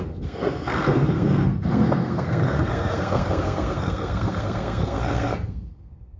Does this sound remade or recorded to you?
remade